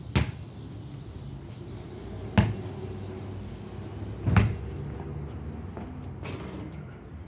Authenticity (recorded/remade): recorded